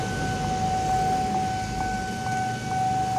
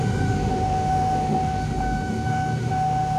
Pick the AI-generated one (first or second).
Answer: second